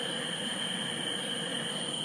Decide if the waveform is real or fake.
real